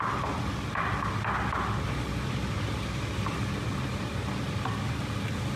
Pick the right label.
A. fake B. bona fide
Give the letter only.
B